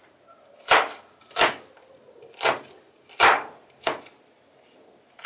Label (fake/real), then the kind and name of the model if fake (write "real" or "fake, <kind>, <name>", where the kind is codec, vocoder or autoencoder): real